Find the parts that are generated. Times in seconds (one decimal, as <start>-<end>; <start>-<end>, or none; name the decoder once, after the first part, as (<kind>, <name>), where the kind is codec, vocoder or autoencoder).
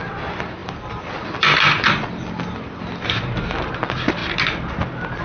0.6-3.7 (vocoder, BigVGAN v2)